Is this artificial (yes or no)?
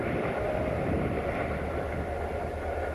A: no